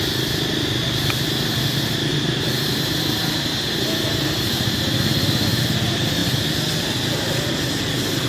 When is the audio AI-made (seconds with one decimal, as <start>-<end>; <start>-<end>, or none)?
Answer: 2.1-5.1